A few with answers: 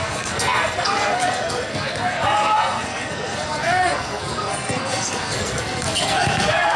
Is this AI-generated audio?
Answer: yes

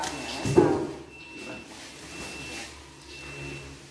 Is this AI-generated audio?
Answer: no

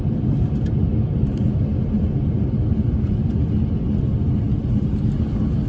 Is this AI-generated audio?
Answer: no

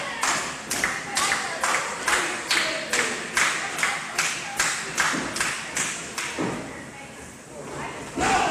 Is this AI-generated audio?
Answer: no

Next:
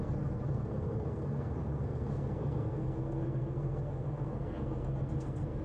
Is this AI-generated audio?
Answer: yes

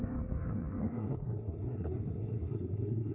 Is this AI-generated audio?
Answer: yes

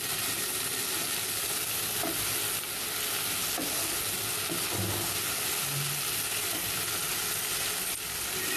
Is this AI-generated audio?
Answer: no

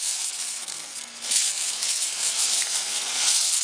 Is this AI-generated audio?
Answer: yes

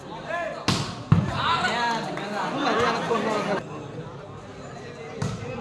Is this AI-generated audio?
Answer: no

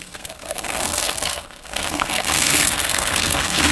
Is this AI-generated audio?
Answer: yes